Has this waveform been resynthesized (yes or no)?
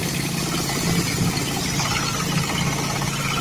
no